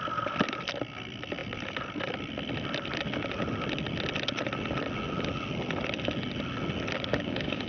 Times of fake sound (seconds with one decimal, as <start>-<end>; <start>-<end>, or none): 7.1-7.7